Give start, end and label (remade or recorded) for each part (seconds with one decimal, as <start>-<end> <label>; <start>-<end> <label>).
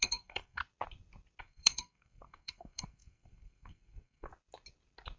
0.0-0.6 remade; 0.6-1.4 recorded; 1.4-4.3 remade; 4.3-5.2 recorded